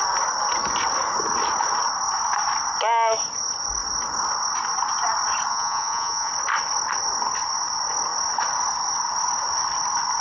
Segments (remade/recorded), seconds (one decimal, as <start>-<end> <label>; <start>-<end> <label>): 0.0-5.5 recorded; 5.5-6.3 remade; 6.3-10.2 recorded